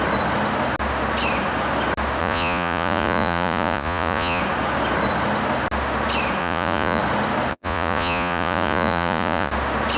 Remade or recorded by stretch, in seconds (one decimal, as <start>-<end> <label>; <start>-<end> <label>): 0.0-2.2 recorded; 2.2-4.4 remade; 4.4-6.4 recorded; 6.4-7.0 remade; 7.0-7.5 recorded; 7.5-9.5 remade; 9.5-10.0 recorded